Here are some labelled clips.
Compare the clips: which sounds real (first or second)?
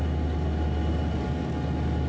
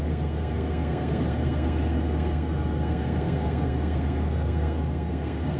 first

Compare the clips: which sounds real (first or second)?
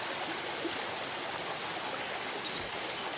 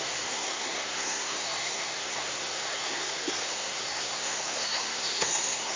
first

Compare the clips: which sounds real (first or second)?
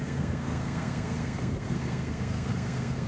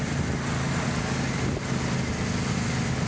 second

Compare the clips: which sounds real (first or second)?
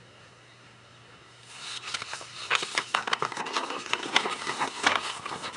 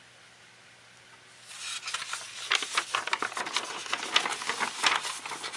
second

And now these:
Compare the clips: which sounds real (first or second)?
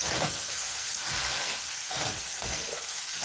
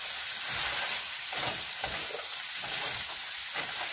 second